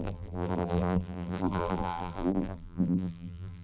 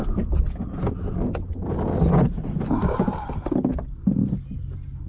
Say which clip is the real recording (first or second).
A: second